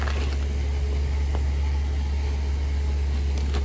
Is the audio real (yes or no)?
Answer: yes